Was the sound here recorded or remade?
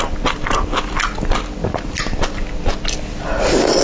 recorded